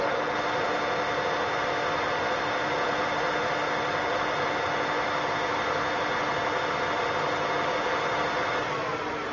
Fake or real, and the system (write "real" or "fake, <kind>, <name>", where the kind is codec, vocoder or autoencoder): real